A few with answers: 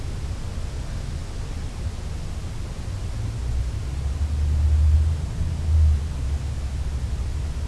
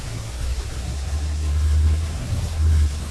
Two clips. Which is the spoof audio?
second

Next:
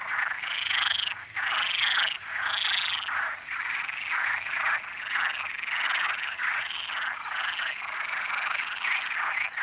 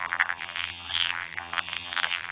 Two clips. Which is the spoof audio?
second